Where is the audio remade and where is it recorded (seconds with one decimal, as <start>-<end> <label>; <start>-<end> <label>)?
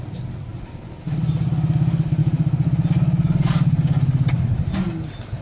0.0-5.4 recorded